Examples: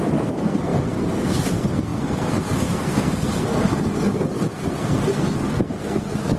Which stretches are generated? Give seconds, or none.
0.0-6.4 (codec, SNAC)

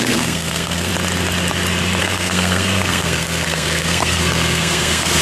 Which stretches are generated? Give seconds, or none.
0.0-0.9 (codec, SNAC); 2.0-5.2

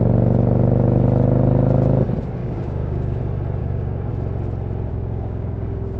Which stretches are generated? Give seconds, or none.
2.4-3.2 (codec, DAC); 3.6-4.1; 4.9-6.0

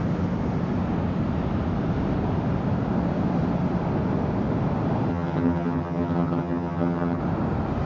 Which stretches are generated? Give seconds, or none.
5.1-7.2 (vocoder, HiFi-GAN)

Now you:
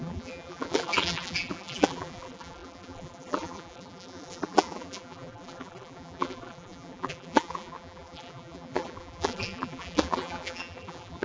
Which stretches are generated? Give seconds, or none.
0.0-11.2 (vocoder, BigVGAN v2)

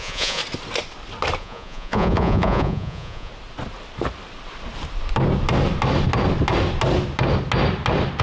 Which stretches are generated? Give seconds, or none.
0.0-0.4 (vocoder, Vocos); 1.4-3.3

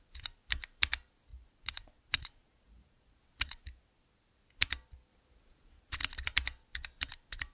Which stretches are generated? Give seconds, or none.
1.3-3.6 (vocoder, Vocos); 5.1-6.0

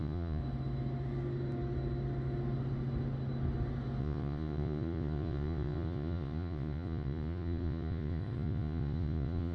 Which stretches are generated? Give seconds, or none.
0.0-0.4 (vocoder, Vocos); 4.0-9.5